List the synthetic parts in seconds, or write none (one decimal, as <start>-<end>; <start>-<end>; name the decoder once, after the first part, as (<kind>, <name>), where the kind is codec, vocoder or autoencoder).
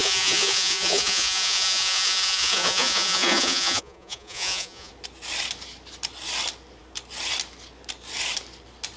0.0-4.9 (vocoder, Vocos)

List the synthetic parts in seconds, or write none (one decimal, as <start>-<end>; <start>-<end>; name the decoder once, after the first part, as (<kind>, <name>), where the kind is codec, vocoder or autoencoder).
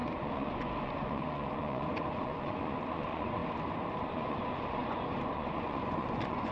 0.0-3.4 (vocoder, Vocos); 4.0-6.5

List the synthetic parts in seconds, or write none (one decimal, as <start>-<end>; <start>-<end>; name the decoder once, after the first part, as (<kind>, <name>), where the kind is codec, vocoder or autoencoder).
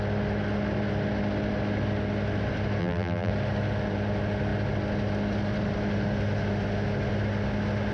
2.8-3.3 (vocoder, BigVGAN v2)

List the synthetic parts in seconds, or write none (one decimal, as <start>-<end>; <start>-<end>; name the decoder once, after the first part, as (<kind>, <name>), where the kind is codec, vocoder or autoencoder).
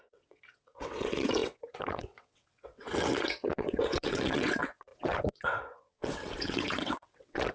0.0-7.5 (vocoder, WaveNeXt)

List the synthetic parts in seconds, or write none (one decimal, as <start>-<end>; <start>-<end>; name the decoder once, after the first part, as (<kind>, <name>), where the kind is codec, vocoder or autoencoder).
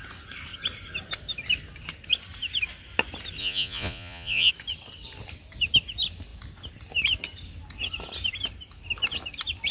3.4-4.5 (vocoder, Vocos)